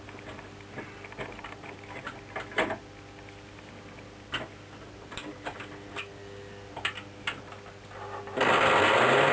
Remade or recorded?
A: recorded